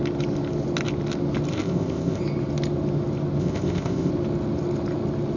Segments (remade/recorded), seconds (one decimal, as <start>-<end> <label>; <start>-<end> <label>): 0.0-1.5 recorded; 1.5-2.2 remade; 2.2-3.4 recorded; 3.4-4.1 remade; 4.1-5.4 recorded